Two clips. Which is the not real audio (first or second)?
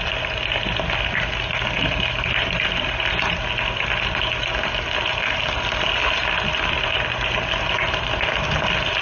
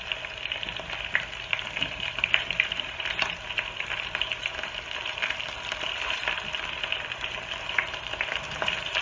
second